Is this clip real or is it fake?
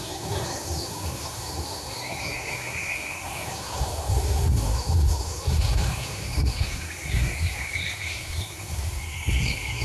fake